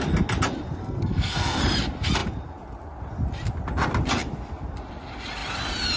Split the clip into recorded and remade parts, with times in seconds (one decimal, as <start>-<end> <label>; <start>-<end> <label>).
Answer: 0.0-0.8 recorded; 0.8-1.6 remade; 1.6-6.0 recorded